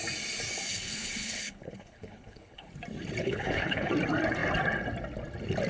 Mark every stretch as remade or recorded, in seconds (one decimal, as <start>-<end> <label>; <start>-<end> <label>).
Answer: 0.0-0.7 recorded; 0.7-2.7 remade; 2.7-3.2 recorded; 3.2-3.9 remade; 3.9-5.7 recorded